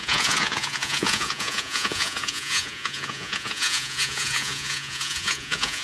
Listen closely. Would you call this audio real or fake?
fake